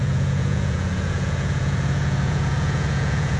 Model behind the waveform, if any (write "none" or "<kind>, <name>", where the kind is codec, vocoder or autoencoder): vocoder, Vocos